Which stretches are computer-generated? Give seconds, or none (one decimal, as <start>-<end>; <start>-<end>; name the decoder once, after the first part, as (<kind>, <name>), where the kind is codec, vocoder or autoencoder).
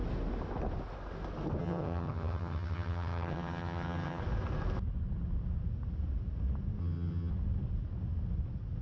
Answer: 1.6-4.2 (vocoder, HiFi-GAN); 6.8-7.3